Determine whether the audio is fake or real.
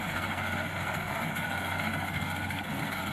fake